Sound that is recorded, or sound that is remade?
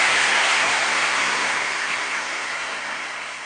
remade